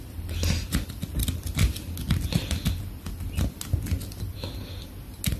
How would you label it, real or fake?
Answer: real